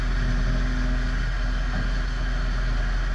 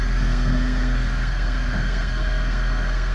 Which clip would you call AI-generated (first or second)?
second